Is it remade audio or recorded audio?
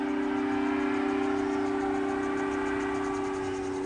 recorded